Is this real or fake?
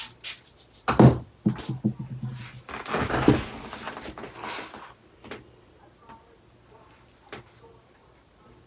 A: real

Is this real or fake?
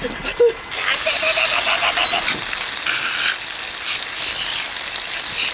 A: real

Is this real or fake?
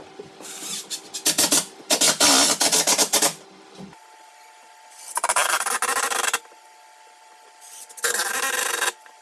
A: real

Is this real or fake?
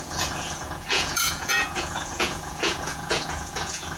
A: fake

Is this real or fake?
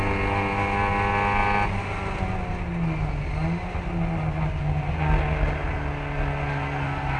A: real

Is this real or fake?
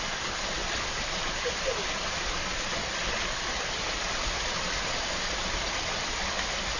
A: real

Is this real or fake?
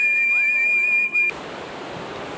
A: real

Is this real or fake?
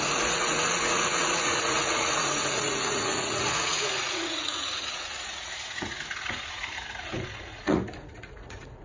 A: fake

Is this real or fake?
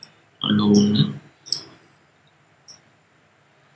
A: real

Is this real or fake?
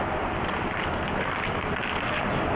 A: real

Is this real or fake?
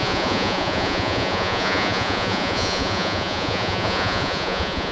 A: fake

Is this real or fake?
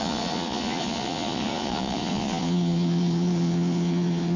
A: fake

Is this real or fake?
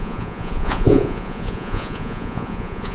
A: fake